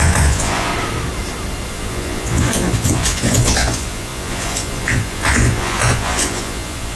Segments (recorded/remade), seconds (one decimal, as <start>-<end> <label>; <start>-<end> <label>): 0.0-0.7 remade; 0.7-1.7 recorded; 1.7-7.0 remade